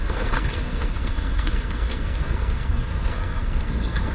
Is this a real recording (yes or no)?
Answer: no